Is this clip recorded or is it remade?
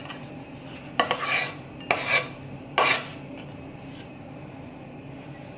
recorded